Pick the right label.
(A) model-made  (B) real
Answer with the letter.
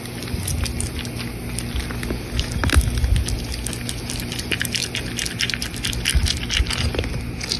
B